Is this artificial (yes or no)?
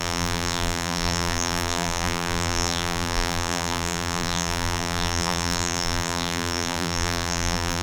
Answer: yes